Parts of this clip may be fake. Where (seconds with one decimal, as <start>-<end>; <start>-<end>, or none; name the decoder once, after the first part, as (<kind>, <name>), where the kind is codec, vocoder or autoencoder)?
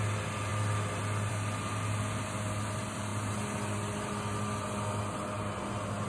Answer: none